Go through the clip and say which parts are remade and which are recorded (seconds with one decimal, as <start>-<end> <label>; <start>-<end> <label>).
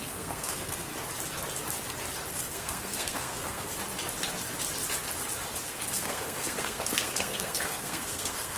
0.0-0.9 remade; 0.9-2.3 recorded; 2.3-3.7 remade; 3.7-5.6 recorded; 5.6-8.6 remade